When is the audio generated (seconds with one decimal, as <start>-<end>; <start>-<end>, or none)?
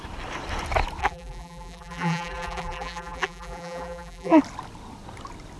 1.0-4.4